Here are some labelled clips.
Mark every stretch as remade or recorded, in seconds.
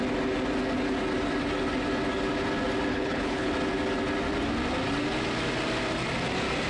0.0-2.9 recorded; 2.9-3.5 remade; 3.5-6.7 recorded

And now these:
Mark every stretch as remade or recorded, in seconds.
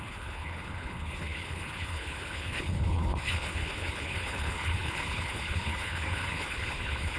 0.0-7.2 remade